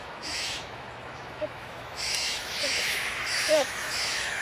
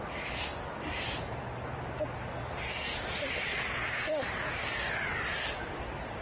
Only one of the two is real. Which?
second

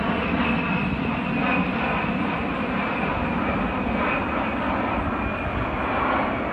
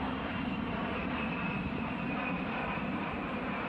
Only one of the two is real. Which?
first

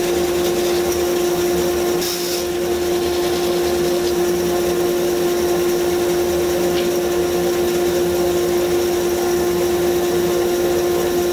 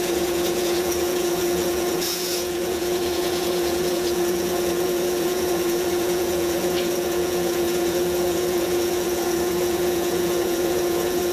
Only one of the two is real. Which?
first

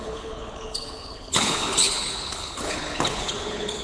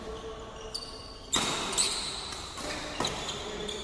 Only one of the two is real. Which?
second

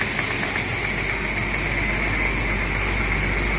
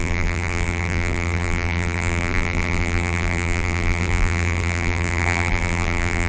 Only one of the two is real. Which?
first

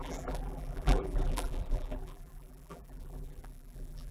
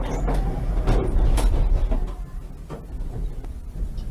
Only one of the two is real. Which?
second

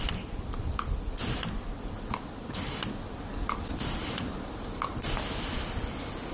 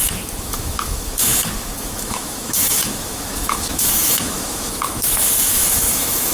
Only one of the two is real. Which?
first